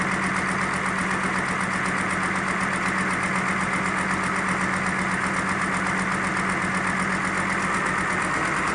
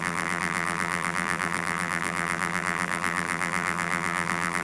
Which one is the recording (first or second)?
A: first